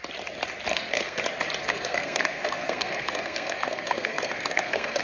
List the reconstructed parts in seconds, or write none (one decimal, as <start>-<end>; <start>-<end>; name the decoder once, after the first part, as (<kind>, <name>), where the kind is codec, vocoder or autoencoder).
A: 0.7-1.2 (codec, SNAC); 1.7-5.0